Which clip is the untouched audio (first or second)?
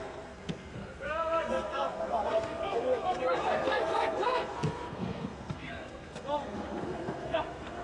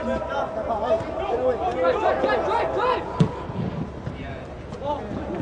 second